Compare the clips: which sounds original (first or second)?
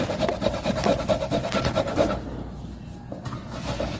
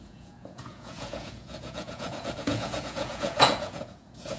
first